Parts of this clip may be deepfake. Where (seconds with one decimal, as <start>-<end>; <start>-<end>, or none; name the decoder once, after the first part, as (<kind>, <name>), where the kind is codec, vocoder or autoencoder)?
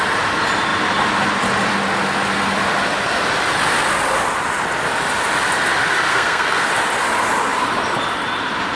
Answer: 6.1-6.7 (codec, SNAC)